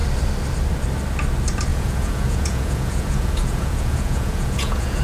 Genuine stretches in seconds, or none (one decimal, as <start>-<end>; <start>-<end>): 0.0-1.7

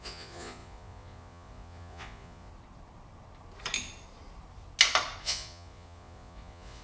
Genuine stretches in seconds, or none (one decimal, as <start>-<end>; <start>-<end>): 2.5-5.2

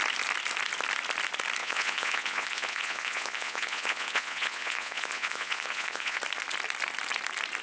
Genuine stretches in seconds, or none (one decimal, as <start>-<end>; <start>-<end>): 0.0-1.6; 6.2-7.6

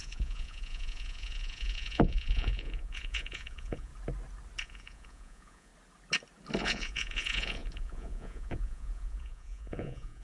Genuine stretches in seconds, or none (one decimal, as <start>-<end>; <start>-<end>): 3.9-4.6; 5.7-6.6

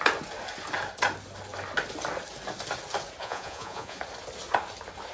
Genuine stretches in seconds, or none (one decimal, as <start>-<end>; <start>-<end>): 0.0-3.2; 4.0-5.1